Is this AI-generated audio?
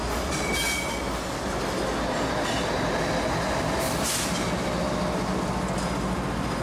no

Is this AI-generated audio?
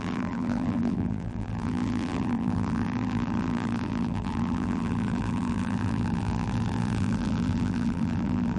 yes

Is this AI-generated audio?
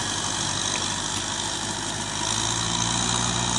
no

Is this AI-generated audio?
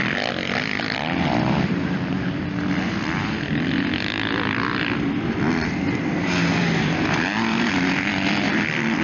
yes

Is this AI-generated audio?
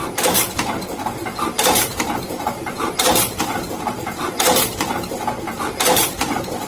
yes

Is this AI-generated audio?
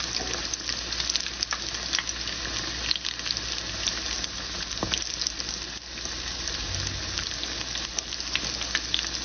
no